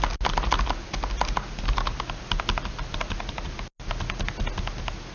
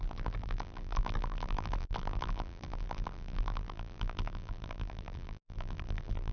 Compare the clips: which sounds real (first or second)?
first